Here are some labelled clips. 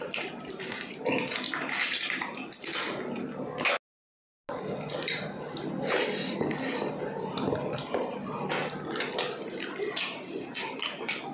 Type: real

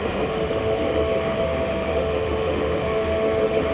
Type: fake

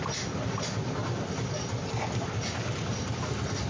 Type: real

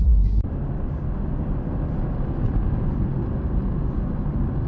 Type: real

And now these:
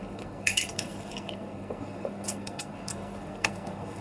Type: fake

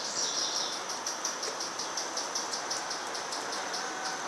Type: real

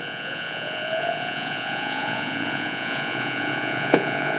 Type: fake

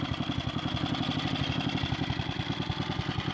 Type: real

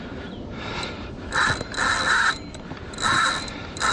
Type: real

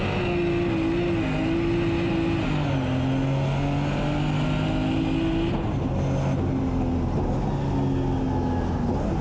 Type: real